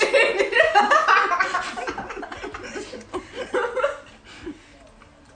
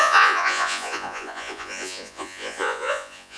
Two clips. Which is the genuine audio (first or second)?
first